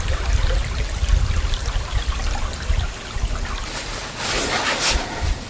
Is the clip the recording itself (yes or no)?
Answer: yes